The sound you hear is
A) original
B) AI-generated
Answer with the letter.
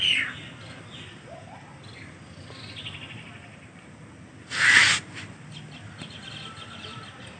A